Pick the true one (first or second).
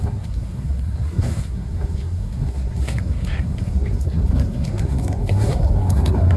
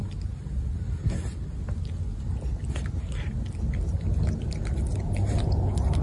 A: second